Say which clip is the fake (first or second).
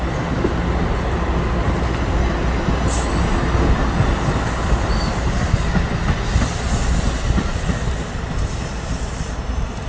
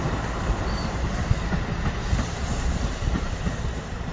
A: second